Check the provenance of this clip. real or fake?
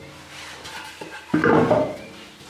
real